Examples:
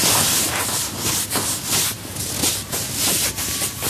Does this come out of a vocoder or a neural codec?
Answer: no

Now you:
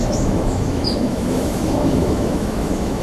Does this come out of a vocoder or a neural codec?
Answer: yes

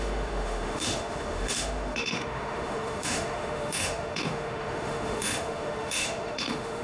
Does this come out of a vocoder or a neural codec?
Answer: yes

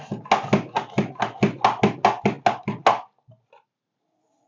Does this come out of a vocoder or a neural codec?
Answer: no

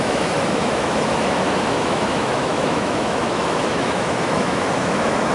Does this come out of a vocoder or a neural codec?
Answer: yes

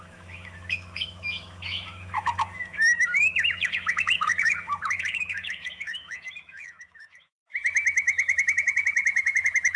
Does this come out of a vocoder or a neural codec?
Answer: yes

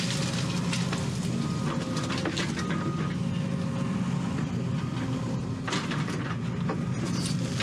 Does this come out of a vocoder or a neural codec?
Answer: no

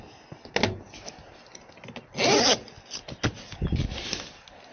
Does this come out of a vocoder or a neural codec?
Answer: no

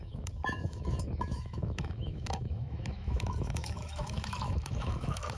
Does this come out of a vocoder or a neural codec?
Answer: yes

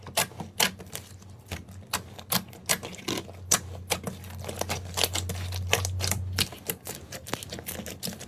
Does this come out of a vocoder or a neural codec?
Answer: no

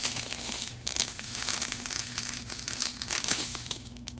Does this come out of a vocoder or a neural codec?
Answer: yes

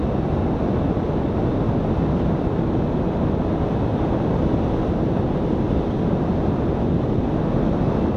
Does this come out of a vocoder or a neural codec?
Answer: no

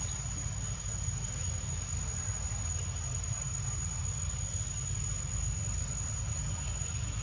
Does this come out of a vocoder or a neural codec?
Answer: no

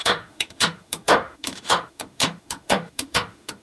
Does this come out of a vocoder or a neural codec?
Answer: yes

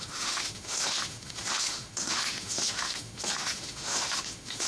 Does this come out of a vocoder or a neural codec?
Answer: yes